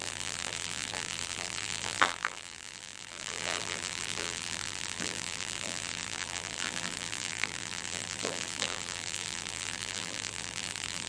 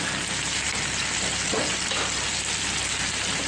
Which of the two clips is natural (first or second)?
second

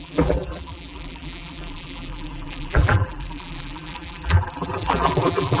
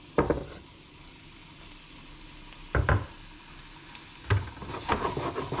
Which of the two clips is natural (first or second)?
second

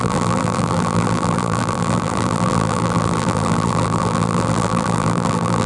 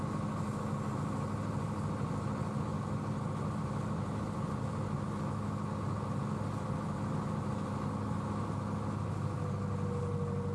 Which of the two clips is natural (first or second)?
second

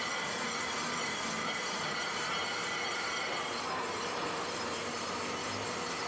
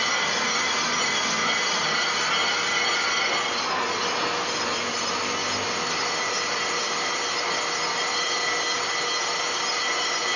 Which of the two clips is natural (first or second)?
second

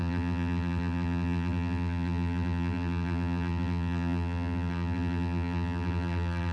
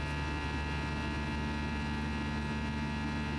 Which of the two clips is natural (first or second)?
second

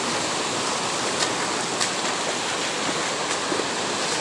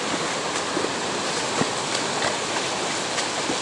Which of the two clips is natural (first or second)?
first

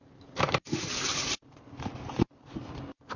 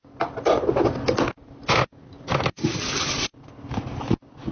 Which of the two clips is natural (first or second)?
second